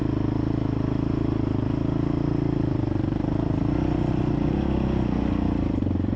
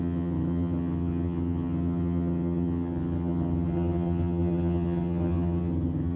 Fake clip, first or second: second